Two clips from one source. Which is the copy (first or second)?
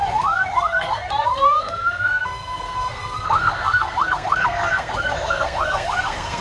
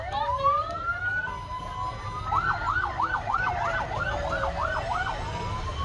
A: first